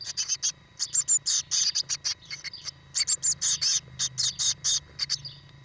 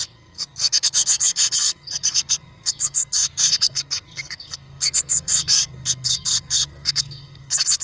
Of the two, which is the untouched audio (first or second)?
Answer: first